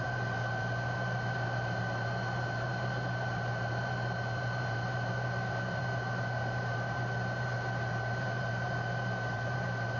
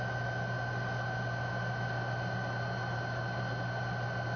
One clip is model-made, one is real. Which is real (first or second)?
second